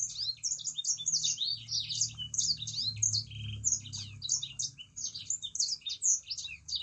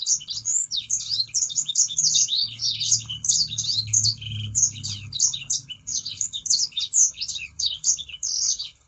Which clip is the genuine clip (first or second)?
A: first